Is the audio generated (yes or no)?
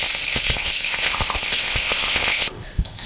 yes